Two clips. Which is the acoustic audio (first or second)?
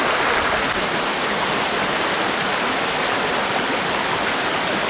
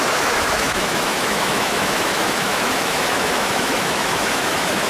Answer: first